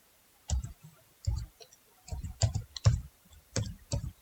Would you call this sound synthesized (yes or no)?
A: yes